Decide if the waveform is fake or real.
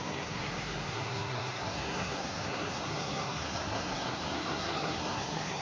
fake